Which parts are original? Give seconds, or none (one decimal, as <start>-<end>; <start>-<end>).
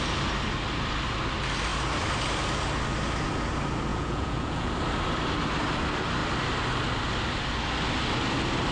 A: 0.0-3.9; 4.7-8.7